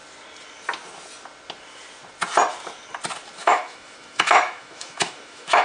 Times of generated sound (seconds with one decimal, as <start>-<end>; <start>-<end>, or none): 3.4-5.6